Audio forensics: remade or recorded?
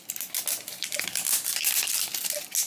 recorded